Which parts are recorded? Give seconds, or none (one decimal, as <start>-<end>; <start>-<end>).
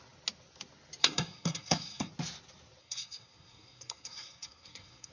0.0-1.0; 2.1-2.8